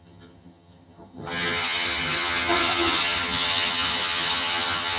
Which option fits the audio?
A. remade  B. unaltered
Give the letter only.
A